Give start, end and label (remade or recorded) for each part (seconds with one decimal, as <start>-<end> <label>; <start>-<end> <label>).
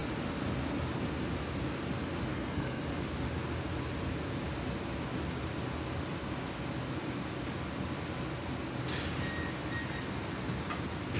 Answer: 0.0-2.3 recorded; 2.3-2.8 remade; 2.8-11.2 recorded